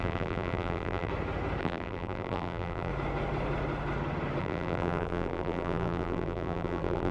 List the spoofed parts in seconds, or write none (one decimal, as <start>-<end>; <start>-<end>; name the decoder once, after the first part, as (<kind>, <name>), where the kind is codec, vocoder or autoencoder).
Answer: 0.0-1.1 (vocoder, BigVGAN v2); 1.6-2.9; 4.4-7.1